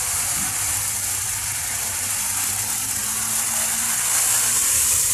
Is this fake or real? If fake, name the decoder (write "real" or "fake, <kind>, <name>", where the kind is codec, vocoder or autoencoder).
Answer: real